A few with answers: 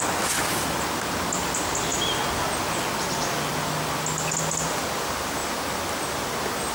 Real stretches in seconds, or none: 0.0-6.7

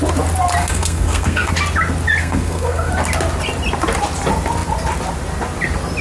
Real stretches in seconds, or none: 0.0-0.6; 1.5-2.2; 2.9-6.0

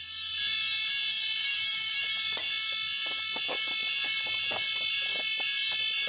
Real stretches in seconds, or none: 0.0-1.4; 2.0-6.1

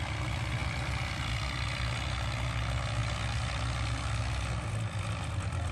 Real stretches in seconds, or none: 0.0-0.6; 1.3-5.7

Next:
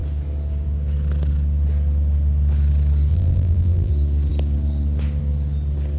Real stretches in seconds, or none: 0.0-3.1; 3.9-6.0

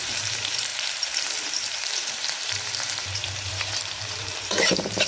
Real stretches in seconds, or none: none